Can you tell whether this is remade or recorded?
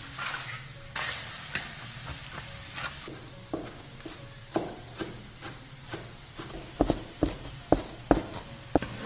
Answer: recorded